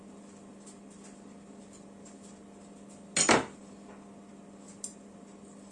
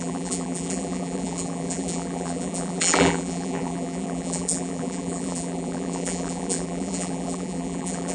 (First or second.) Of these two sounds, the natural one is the first